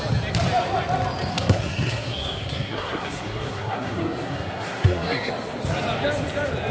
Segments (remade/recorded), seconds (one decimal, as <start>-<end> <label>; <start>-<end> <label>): 0.0-1.3 recorded; 1.3-5.3 remade; 5.3-6.7 recorded